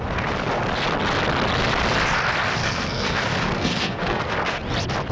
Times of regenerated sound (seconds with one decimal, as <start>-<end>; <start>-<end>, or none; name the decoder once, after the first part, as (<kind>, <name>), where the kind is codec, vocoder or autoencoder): 2.6-3.2 (codec, SNAC); 3.6-4.3

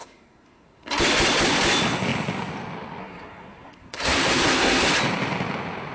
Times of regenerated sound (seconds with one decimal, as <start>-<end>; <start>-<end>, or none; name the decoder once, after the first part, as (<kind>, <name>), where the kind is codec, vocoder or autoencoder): 0.0-1.0 (codec, SNAC); 3.0-4.9

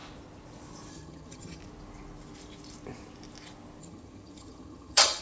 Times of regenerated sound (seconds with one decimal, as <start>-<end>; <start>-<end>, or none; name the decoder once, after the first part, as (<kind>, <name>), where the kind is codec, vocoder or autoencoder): 0.9-1.6 (vocoder, HiFi-GAN); 3.8-5.2

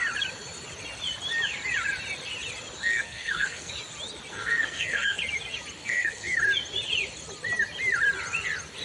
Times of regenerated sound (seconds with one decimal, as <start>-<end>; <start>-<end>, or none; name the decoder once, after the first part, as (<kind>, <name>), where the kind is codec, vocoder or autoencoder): 2.8-3.7 (codec, SNAC); 4.3-5.2; 5.8-6.4

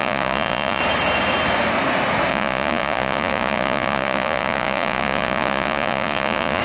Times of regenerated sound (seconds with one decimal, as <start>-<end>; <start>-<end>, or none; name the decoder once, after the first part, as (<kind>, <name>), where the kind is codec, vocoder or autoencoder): 0.0-0.8 (vocoder, Vocos); 2.3-6.6